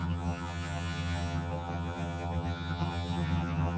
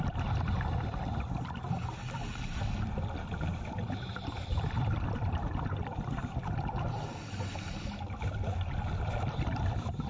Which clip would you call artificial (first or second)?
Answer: first